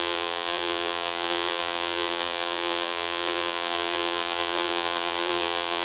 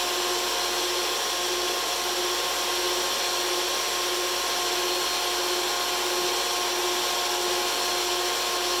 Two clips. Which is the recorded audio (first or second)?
second